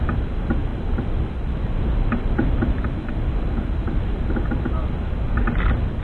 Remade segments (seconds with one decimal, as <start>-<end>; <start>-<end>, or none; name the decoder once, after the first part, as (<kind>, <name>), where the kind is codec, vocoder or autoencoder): none